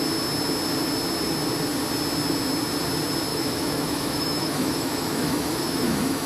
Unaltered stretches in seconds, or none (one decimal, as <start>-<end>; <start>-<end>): 0.0-3.3